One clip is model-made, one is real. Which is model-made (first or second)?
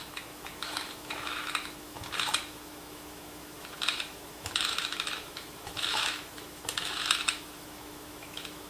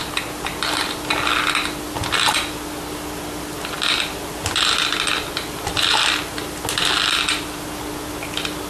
first